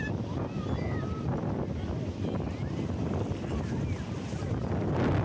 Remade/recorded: recorded